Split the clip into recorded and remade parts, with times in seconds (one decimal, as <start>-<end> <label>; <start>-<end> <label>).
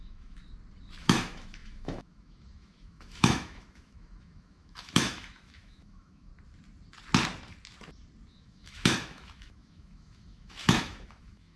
0.0-0.4 remade; 0.4-1.0 recorded; 1.0-6.3 remade; 6.3-8.3 recorded; 8.3-11.6 remade